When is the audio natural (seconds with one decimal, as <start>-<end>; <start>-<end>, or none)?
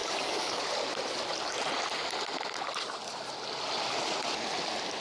0.6-5.0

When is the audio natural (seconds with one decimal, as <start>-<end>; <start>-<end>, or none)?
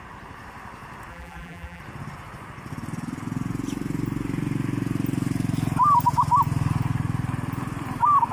0.0-1.1; 1.8-8.3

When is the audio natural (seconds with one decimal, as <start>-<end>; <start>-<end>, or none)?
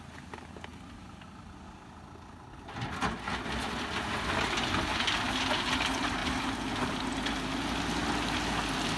0.0-0.7; 1.5-6.2; 7.0-9.0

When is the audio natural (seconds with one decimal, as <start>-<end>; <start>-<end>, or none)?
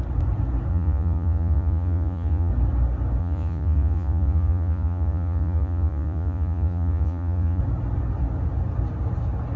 0.0-0.7; 2.5-3.2; 7.6-9.6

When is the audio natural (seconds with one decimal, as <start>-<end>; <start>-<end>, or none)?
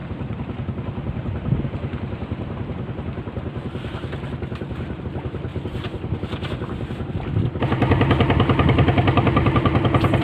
5.0-5.5; 7.1-10.2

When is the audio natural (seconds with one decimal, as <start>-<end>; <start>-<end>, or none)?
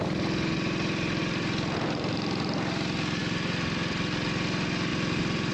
0.0-1.2; 2.1-4.9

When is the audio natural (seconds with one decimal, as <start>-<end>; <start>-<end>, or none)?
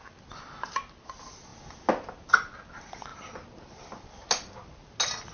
0.0-5.3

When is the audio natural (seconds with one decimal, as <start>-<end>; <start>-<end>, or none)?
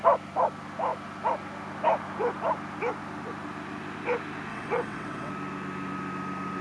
0.0-4.5; 5.3-6.6